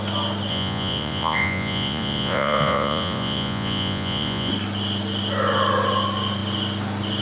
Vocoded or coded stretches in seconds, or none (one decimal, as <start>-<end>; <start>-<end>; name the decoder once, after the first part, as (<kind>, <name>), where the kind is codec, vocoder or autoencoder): 0.5-4.5 (vocoder, Vocos)